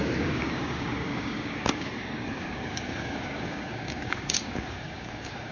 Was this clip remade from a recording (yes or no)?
yes